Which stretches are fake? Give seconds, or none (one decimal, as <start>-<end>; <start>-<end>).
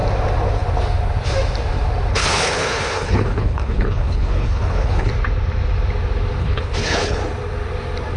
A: 2.1-5.1; 6.4-7.2